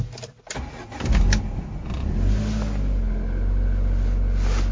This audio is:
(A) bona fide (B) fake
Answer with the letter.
A